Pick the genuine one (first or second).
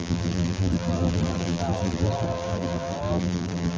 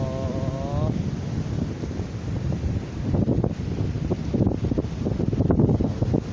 second